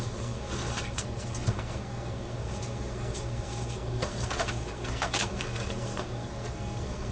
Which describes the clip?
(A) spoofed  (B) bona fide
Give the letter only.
A